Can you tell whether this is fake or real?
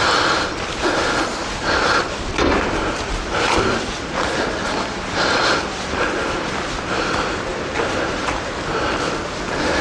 fake